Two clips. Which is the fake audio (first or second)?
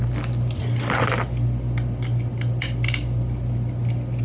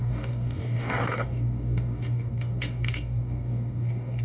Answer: second